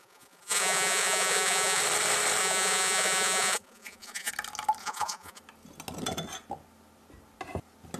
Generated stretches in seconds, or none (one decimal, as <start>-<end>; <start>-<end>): 0.0-1.8; 2.4-4.3; 4.8-5.4